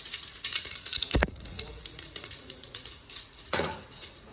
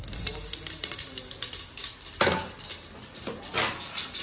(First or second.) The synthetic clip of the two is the first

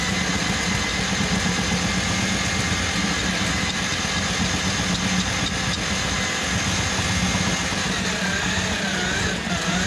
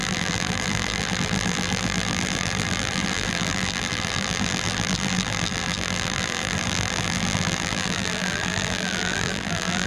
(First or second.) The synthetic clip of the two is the second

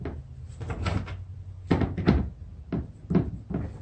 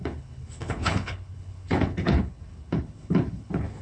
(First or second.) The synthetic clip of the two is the second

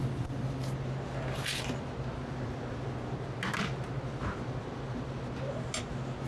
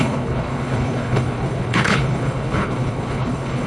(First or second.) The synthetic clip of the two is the second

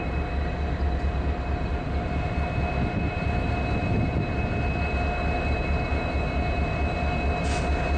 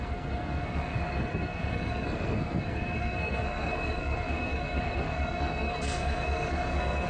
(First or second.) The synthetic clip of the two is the second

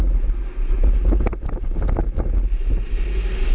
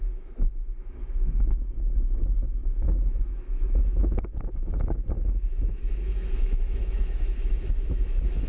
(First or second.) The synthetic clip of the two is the second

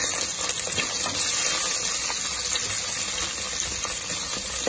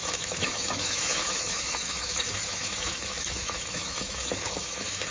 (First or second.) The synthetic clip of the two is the second